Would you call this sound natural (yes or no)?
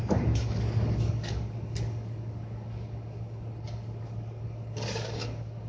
no